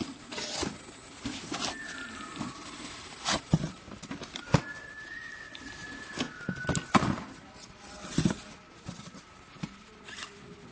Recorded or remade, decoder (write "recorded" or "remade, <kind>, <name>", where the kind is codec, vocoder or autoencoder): recorded